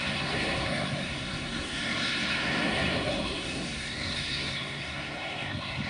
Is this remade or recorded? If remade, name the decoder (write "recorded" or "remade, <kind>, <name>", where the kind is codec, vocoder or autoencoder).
remade, codec, SNAC